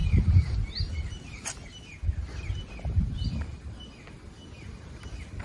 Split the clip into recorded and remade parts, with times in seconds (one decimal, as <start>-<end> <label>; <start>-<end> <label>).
0.0-1.9 remade; 1.9-5.4 recorded